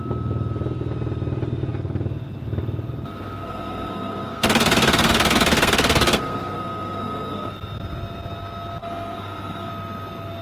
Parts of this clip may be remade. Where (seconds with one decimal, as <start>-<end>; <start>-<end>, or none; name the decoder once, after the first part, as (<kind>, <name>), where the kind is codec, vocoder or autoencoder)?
3.4-7.5 (codec, SNAC); 8.8-9.7